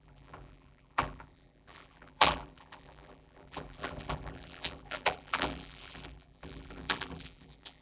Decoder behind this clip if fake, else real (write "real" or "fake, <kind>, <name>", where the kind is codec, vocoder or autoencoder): fake, vocoder, BigVGAN v2